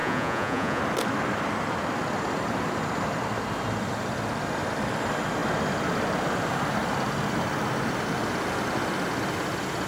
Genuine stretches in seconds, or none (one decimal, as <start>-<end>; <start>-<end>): 0.8-9.9